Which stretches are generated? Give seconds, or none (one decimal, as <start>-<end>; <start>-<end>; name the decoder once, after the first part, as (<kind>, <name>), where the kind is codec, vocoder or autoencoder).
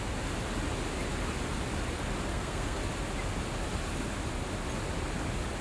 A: 2.3-2.8 (codec, SNAC)